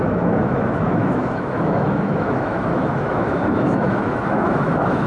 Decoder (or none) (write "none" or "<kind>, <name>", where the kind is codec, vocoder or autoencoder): autoencoder, DAC-VAE